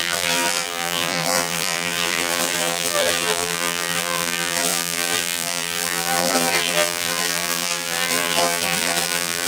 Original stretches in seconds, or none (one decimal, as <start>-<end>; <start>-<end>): none